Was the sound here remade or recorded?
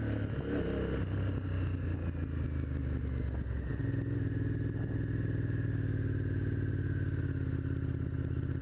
recorded